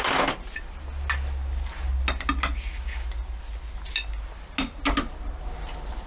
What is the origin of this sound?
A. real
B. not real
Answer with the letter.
A